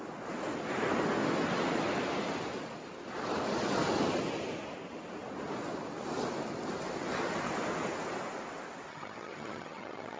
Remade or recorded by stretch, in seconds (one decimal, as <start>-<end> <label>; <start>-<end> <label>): 0.0-8.9 recorded; 8.9-10.2 remade